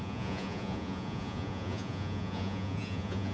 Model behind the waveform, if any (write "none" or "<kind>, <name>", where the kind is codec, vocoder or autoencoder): vocoder, Vocos